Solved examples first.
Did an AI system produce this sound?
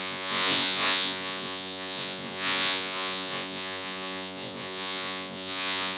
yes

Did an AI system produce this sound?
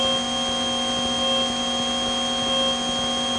no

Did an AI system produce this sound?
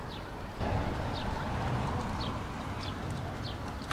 no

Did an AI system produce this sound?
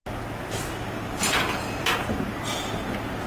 no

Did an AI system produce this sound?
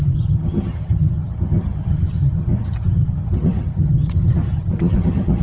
yes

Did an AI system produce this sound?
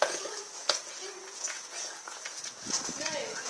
yes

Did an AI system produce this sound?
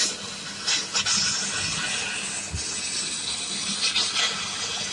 no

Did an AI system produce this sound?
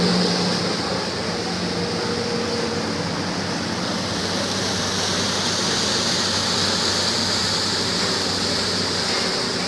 no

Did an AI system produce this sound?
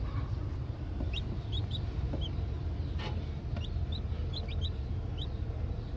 no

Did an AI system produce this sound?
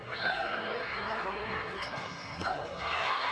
yes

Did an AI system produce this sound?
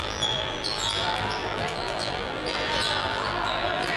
yes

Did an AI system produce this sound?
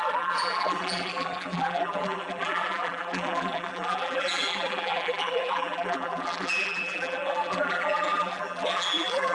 yes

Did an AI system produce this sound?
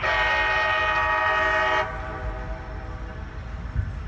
no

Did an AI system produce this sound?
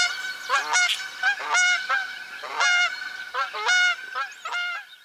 no